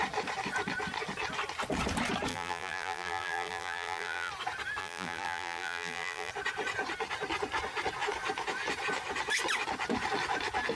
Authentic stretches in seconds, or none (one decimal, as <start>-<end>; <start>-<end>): 0.0-2.3; 4.3-4.8; 6.3-10.8